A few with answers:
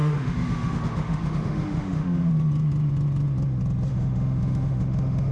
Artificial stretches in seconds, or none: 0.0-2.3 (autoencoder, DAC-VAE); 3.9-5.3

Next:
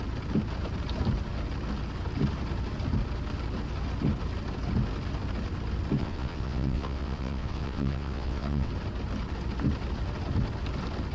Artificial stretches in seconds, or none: 6.0-8.7 (vocoder, WaveNeXt)

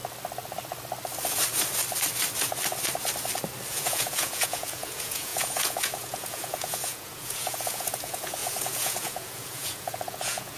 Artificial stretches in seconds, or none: 3.7-10.6 (vocoder, Vocos)

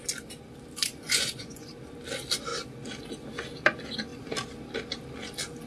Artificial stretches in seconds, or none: 0.8-1.7 (vocoder, Vocos)

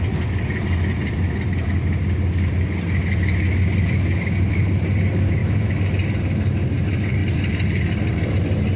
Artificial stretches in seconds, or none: 5.4-5.9 (vocoder, BigVGAN v2)